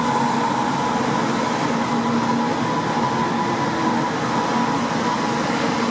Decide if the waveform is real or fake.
real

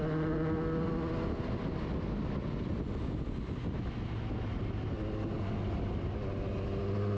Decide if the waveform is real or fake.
real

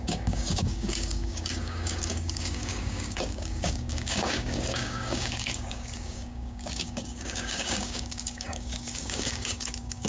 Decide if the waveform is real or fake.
fake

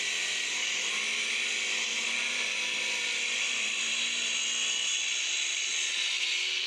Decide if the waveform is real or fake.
real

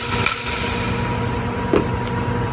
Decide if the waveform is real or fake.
real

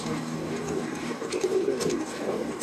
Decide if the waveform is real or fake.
fake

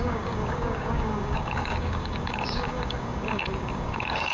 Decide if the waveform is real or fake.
fake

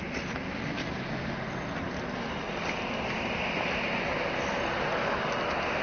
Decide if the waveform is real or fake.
real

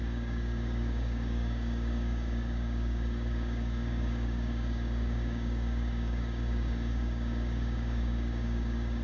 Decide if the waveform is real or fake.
fake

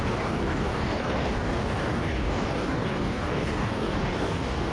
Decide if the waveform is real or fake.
fake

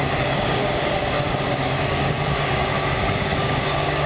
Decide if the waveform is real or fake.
fake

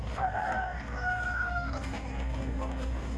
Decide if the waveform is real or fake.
fake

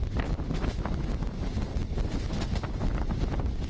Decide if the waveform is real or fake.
real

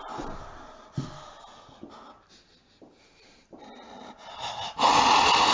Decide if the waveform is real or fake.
real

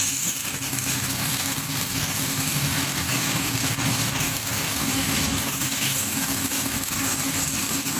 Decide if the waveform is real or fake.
fake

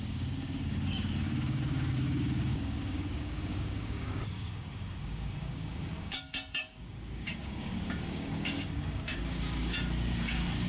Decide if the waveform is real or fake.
fake